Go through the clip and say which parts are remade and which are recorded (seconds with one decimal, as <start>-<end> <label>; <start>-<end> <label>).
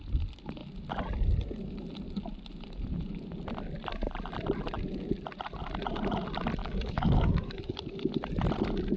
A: 0.0-6.6 recorded; 6.6-7.8 remade; 7.8-9.0 recorded